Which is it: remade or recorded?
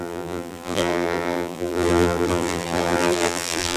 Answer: remade